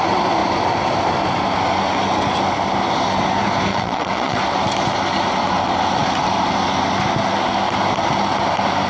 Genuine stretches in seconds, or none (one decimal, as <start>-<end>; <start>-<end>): 0.0-3.7; 4.4-8.9